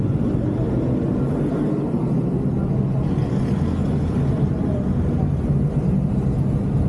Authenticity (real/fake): real